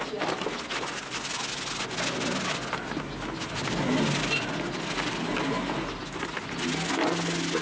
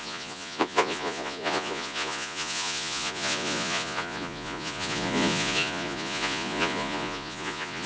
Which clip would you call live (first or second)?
first